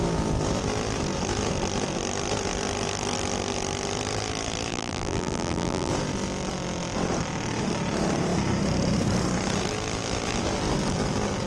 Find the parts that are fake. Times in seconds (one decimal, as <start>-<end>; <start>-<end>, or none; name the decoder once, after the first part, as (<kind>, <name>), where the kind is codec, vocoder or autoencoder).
4.7-5.9 (vocoder, BigVGAN v2)